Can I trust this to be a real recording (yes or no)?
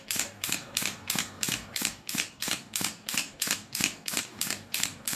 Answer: no